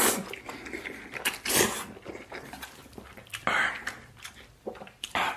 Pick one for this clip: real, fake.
real